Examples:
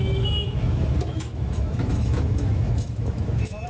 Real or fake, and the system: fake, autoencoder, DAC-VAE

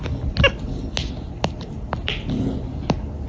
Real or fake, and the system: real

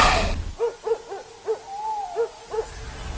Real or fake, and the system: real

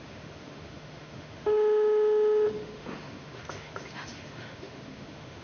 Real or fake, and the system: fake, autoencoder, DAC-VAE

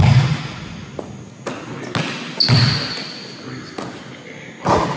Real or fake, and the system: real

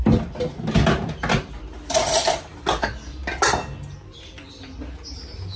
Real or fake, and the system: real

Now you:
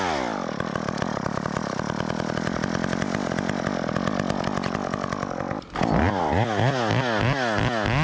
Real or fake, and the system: real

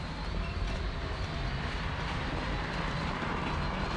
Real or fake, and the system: real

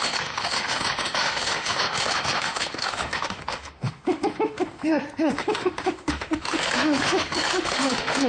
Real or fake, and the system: fake, autoencoder, DAC-VAE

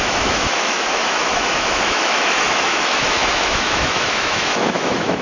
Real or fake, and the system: fake, autoencoder, DAC-VAE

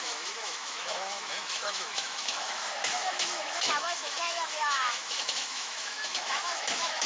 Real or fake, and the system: fake, autoencoder, DAC-VAE